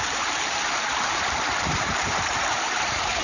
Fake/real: fake